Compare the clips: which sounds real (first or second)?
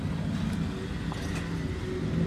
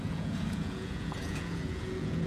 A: first